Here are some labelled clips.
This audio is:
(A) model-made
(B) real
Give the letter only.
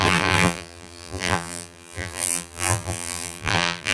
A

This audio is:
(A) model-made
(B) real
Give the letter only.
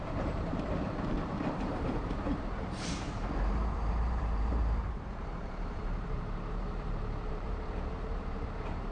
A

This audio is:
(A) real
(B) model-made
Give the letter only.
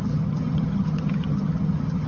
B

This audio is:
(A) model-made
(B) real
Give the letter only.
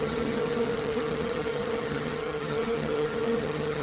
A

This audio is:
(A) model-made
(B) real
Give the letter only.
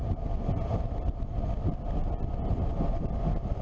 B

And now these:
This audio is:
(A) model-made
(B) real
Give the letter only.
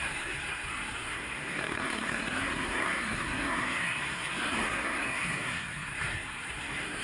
A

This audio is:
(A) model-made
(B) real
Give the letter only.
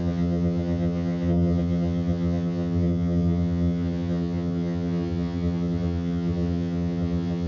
A